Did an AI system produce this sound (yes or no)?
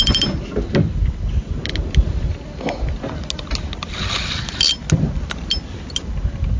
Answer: no